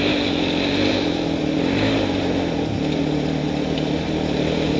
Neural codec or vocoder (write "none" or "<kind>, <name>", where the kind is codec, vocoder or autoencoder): none